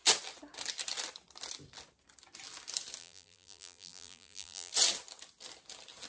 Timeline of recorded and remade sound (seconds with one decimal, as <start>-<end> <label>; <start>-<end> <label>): 0.0-3.0 recorded; 3.0-4.7 remade; 4.7-6.1 recorded